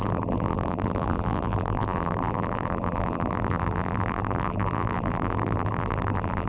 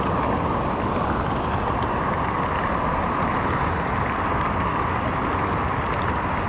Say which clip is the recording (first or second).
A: second